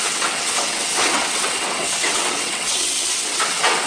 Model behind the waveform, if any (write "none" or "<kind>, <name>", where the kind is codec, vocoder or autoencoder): vocoder, WaveNeXt